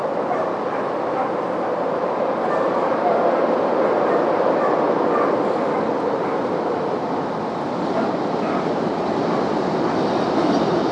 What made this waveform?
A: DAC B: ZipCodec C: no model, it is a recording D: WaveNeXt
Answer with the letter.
C